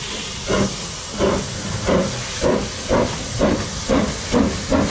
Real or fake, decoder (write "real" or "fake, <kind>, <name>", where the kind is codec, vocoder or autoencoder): real